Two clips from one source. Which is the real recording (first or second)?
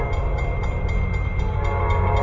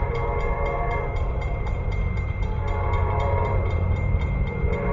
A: first